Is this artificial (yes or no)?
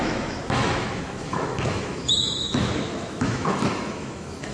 yes